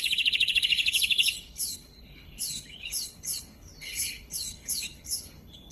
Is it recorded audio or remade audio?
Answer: remade